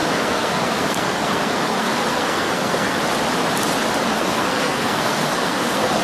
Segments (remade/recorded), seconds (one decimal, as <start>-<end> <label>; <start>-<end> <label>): 0.0-3.0 remade; 3.0-4.1 recorded; 4.1-6.0 remade